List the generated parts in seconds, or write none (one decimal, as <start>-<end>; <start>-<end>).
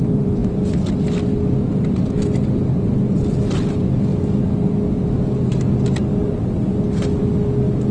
none